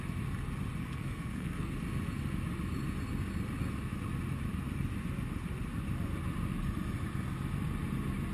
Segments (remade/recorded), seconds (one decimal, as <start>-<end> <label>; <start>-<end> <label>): 0.0-0.8 recorded; 0.8-1.7 remade; 1.7-8.3 recorded